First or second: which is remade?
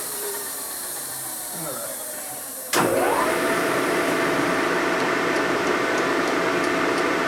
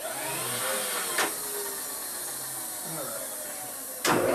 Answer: first